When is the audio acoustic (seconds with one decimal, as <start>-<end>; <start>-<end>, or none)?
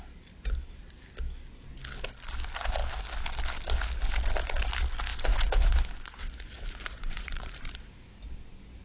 0.0-5.1; 7.5-8.8